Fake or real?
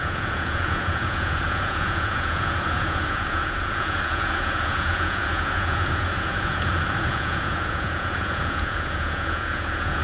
fake